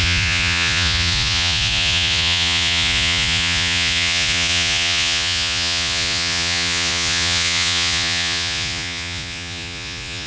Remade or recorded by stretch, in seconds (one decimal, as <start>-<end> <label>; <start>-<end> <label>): 0.0-10.3 remade